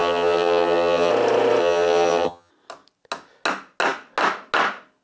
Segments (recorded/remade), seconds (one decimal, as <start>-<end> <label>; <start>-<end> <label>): 0.0-1.1 remade; 1.1-1.6 recorded; 1.6-2.5 remade; 2.5-5.0 recorded